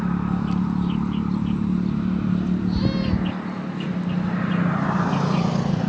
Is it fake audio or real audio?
real